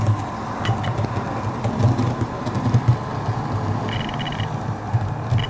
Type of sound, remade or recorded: recorded